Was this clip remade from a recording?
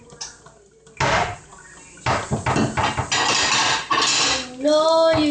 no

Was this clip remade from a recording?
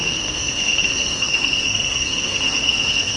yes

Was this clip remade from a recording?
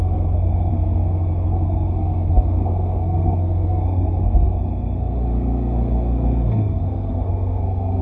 yes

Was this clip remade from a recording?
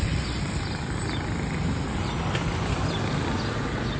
no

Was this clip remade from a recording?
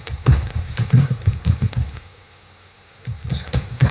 yes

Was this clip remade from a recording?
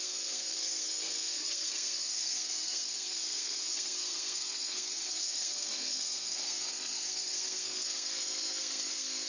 yes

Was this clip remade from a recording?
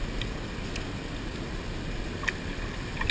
no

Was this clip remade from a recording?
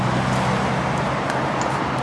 no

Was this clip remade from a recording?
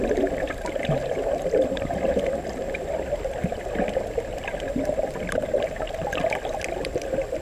no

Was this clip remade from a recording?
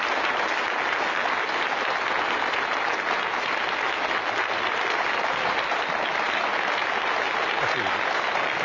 no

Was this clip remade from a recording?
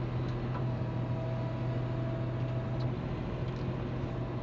no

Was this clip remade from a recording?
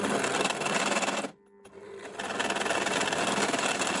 no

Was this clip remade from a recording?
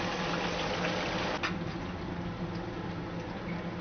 no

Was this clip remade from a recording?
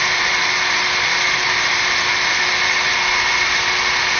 no